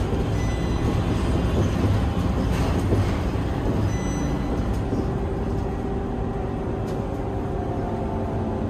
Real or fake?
real